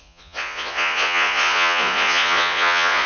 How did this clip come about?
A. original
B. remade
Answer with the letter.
B